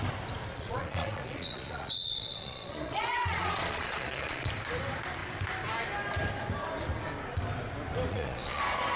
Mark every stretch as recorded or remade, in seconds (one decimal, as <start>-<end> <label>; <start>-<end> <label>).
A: 0.0-0.5 recorded; 0.5-4.5 remade; 4.5-8.1 recorded; 8.1-8.6 remade; 8.6-9.0 recorded